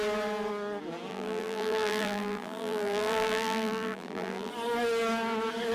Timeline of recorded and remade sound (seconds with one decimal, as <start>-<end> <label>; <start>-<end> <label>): 0.0-1.1 recorded; 1.1-4.5 remade; 4.5-5.7 recorded